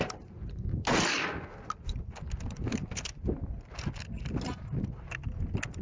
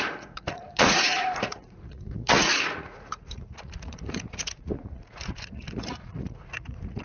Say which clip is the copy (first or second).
second